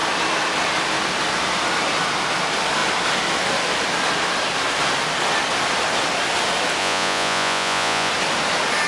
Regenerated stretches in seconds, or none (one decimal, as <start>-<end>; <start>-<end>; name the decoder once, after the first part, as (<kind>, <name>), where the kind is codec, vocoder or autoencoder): 6.8-8.1 (vocoder, Vocos)